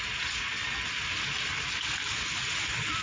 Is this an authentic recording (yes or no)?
yes